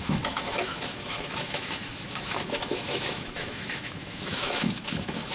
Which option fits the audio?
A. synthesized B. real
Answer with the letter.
A